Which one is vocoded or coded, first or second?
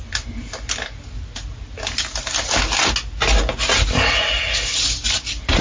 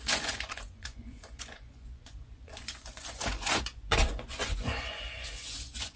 second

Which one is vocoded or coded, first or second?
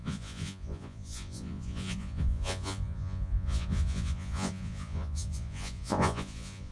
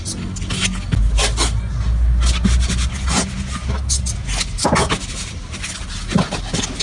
first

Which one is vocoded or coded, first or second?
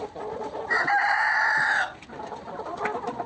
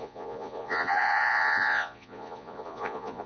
second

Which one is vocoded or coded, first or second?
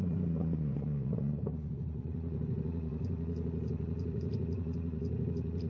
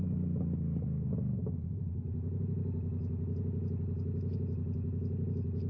first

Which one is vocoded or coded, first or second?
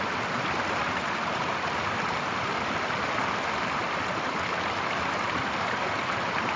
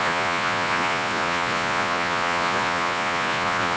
second